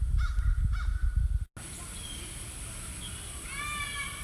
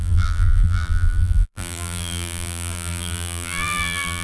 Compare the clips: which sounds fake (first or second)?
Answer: second